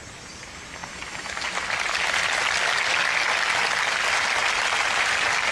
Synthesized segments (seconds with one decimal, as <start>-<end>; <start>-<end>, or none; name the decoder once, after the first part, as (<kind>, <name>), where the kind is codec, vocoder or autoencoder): none